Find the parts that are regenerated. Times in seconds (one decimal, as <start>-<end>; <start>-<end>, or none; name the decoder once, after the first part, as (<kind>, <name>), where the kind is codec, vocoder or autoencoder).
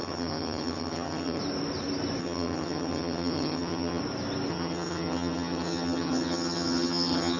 0.0-1.4 (vocoder, HiFi-GAN); 2.2-4.0; 4.5-7.4